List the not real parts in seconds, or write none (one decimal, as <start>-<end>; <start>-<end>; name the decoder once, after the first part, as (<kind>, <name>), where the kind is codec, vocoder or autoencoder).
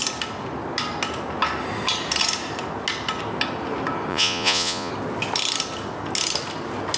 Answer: 4.1-4.9 (vocoder, Vocos)